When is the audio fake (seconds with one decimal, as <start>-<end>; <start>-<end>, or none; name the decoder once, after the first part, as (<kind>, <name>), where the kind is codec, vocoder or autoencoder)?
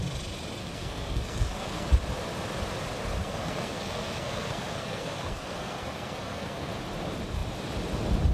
0.6-1.9 (codec, SNAC); 3.2-6.7